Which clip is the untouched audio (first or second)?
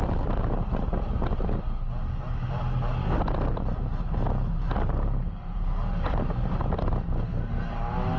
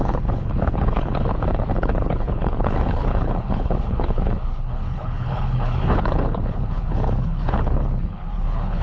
first